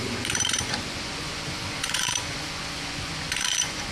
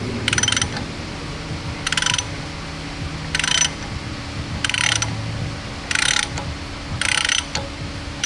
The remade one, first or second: first